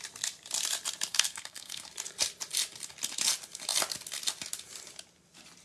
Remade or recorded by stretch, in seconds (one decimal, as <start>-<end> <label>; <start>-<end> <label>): 0.0-1.1 recorded; 1.1-1.9 remade; 1.9-5.6 recorded